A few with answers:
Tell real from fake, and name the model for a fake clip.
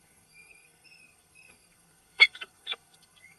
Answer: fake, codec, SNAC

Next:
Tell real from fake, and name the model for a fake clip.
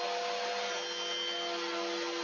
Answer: real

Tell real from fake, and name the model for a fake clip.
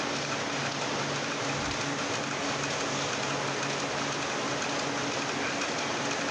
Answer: real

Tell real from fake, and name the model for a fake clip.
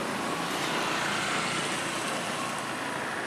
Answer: real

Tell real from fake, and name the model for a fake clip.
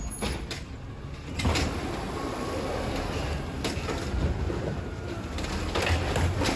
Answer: real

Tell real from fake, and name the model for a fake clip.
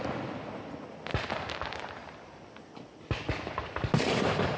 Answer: real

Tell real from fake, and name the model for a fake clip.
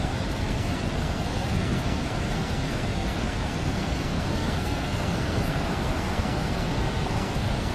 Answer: fake, codec, SNAC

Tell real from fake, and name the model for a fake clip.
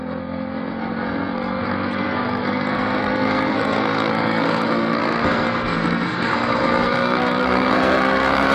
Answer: fake, codec, SNAC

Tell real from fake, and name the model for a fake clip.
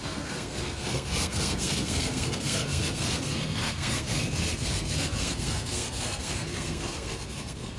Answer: fake, codec, SNAC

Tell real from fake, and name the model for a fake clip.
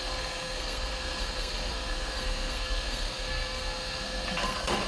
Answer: fake, codec, SNAC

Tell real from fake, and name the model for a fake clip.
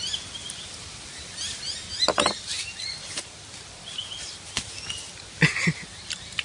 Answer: real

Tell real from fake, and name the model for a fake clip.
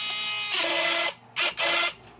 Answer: real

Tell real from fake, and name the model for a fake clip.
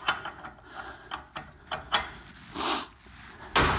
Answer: real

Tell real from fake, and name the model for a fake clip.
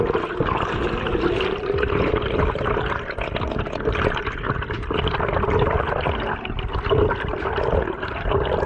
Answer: real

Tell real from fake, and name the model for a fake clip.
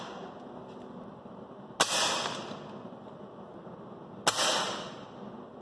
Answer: real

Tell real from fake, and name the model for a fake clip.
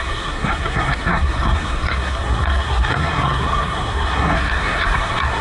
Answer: fake, codec, SNAC